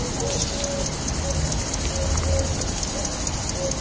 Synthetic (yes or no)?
no